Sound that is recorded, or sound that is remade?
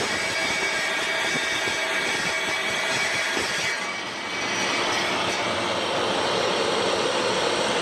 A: recorded